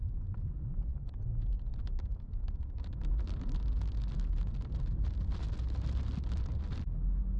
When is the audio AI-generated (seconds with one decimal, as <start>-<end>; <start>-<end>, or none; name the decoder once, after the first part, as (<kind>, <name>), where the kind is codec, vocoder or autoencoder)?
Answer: none